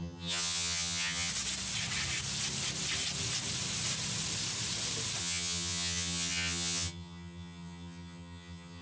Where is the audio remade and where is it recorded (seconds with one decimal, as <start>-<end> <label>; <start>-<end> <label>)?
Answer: 0.0-1.3 remade; 1.3-5.2 recorded; 5.2-8.8 remade